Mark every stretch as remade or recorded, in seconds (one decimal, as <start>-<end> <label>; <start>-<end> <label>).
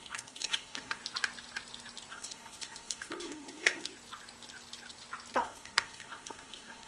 0.0-1.0 remade; 1.0-2.1 recorded; 2.1-3.9 remade; 3.9-5.3 recorded; 5.3-6.9 remade